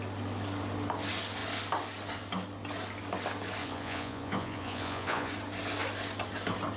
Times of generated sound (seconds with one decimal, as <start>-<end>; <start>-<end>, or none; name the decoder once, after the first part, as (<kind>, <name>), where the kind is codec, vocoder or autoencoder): 3.6-5.3 (vocoder, Vocos)